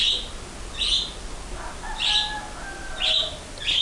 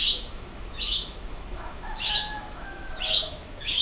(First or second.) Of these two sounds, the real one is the first